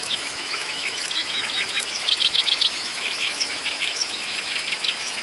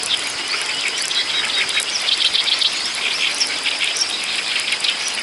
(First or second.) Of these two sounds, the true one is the second